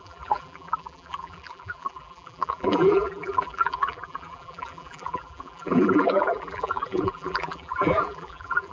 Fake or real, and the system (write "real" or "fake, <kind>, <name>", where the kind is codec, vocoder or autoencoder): fake, vocoder, BigVGAN v2